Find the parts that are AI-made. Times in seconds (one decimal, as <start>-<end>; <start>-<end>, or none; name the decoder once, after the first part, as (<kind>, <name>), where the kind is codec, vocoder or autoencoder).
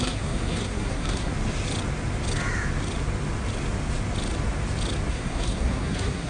0.0-1.3 (codec, SNAC); 5.1-6.3